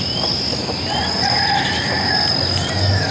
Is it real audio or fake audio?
real